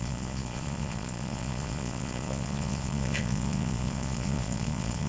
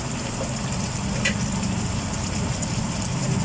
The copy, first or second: first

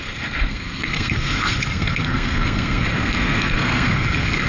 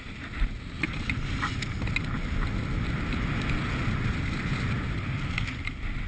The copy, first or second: first